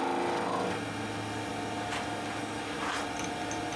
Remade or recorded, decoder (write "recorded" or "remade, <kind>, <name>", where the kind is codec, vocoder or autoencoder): recorded